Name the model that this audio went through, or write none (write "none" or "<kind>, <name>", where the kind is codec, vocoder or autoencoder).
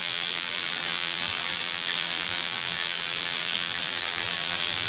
vocoder, BigVGAN v2